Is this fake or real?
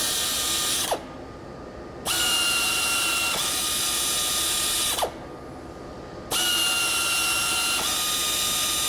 real